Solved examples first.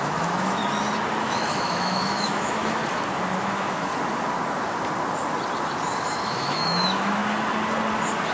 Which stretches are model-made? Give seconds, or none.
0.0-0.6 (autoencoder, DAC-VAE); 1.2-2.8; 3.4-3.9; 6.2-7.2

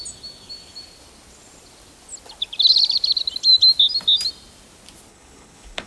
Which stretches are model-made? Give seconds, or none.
5.1-5.9 (codec, HILCodec)

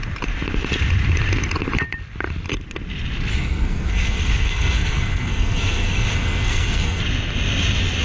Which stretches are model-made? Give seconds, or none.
3.3-7.0 (codec, SNAC)

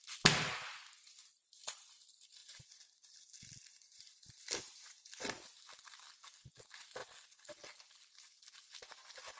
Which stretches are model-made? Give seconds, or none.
none

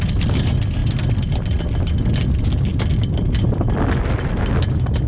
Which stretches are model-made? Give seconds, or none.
none